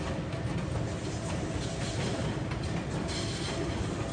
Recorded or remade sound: recorded